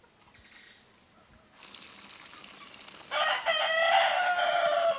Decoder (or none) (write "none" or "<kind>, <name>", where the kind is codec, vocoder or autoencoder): none